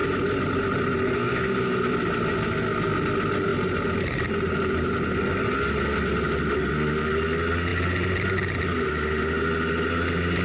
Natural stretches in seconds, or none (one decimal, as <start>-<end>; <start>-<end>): 0.0-10.4